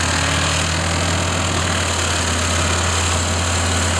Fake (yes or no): no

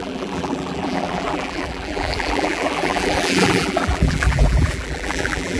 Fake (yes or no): yes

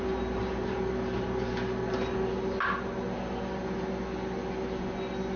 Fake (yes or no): no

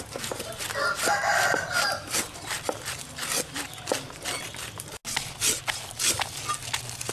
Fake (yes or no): no